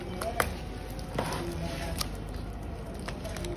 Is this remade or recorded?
recorded